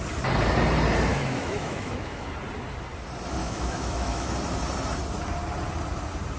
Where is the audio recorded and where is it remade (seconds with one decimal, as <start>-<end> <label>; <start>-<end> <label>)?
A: 0.0-1.1 recorded; 1.1-2.3 remade; 2.3-3.4 recorded; 3.4-4.3 remade; 4.3-6.4 recorded